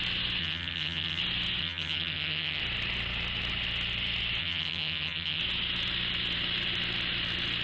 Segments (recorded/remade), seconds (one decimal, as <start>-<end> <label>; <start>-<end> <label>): 0.0-0.4 recorded; 0.4-1.2 remade; 1.2-1.6 recorded; 1.6-2.6 remade; 2.6-4.4 recorded; 4.4-5.4 remade; 5.4-7.6 recorded

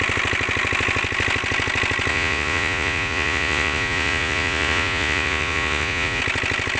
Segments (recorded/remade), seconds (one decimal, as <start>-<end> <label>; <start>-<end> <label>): 0.0-2.1 recorded; 2.1-6.2 remade; 6.2-6.8 recorded

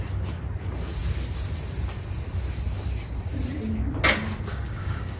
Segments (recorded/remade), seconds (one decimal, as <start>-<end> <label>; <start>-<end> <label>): 0.0-4.5 recorded; 4.5-5.2 remade

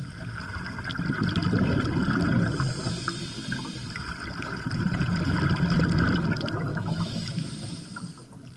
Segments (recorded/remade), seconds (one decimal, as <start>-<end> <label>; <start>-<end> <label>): 0.0-6.7 recorded; 6.7-7.5 remade; 7.5-8.6 recorded

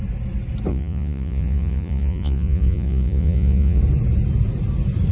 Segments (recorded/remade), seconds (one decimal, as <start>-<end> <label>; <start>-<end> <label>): 0.0-0.7 recorded; 0.7-3.8 remade; 3.8-5.1 recorded